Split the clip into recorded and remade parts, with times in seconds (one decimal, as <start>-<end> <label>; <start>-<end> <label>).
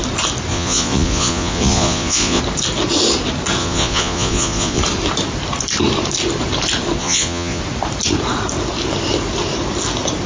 0.0-0.5 recorded; 0.5-2.4 remade; 2.4-3.6 recorded; 3.6-4.8 remade; 4.8-7.0 recorded; 7.0-7.6 remade; 7.6-10.3 recorded